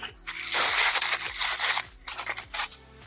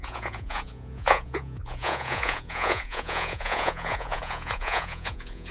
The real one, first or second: first